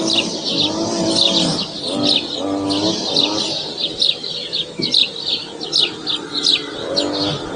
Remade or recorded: recorded